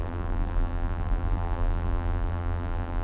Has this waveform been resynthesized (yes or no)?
yes